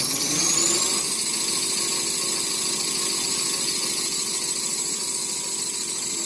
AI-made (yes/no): no